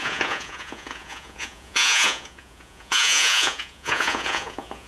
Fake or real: fake